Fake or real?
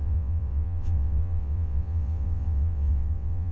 fake